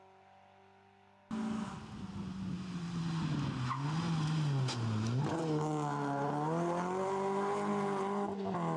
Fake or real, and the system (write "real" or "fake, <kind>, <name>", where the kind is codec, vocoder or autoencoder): real